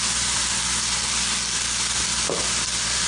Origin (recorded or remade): recorded